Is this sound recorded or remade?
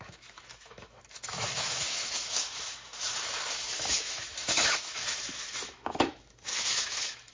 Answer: remade